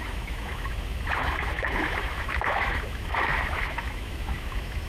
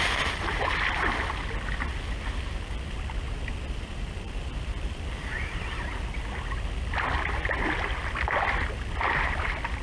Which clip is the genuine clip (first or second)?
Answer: second